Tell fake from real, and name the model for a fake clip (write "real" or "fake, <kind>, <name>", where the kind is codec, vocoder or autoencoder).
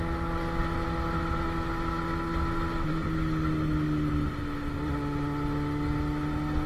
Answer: real